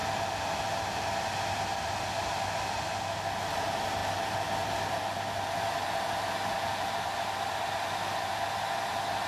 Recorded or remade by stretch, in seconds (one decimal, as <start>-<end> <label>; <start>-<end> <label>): 0.0-9.3 recorded

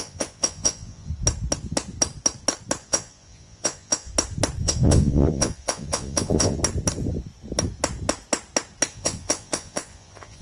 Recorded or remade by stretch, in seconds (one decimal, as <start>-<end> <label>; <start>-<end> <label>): 0.0-1.1 remade; 1.1-2.8 recorded; 2.8-4.1 remade; 4.1-4.6 recorded; 4.6-6.6 remade; 6.6-8.9 recorded; 8.9-10.4 remade

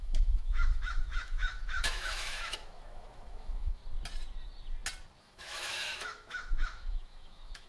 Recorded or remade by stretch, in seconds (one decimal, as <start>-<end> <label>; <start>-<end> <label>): 0.0-3.8 remade; 3.8-5.2 recorded; 5.2-7.7 remade

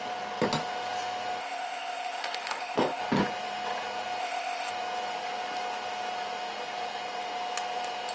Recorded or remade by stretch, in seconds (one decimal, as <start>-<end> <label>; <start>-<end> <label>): 0.0-1.4 recorded; 1.4-3.0 remade; 3.0-4.2 recorded; 4.2-4.7 remade; 4.7-8.1 recorded

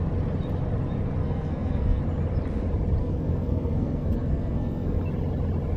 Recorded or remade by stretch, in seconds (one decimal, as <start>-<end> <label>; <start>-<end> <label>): 0.0-1.2 recorded; 1.2-2.0 remade; 2.0-3.0 recorded; 3.0-5.0 remade; 5.0-5.8 recorded